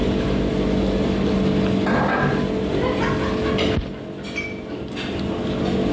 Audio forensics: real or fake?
real